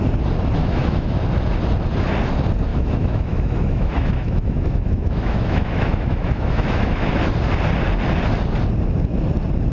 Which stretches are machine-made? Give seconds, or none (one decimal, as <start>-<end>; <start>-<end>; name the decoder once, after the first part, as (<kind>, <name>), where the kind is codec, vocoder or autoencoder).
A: 0.6-1.2 (autoencoder, DAC-VAE); 2.7-7.1